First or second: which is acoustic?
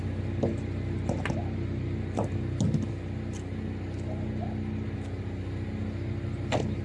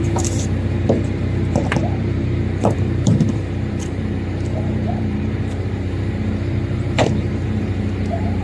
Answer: first